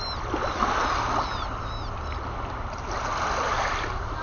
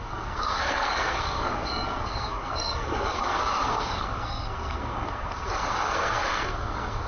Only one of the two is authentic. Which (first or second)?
first